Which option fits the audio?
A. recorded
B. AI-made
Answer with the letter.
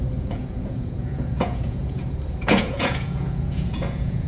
B